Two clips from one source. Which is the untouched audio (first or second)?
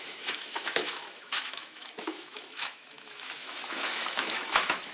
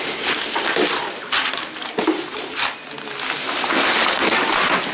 second